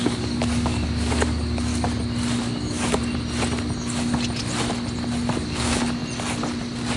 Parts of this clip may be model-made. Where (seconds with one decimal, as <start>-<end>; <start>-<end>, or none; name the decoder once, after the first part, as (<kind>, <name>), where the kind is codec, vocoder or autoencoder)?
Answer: 0.0-1.7 (codec, DAC); 2.4-3.0; 5.4-6.0